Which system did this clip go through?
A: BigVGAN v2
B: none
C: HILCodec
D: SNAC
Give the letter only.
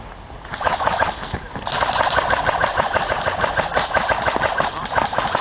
A